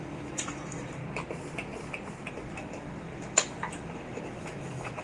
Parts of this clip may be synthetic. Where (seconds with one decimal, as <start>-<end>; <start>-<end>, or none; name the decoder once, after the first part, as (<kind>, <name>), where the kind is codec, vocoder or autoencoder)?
0.0-1.0 (autoencoder, DAC-VAE); 2.3-5.0